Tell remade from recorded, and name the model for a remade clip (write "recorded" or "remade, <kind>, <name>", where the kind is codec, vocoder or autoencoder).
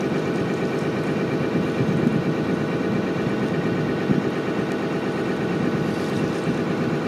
recorded